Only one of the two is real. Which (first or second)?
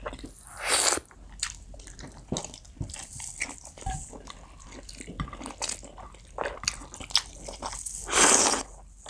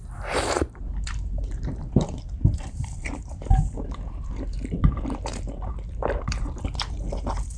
first